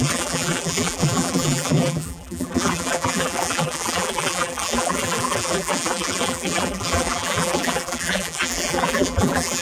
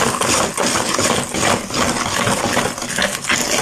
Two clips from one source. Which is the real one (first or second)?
second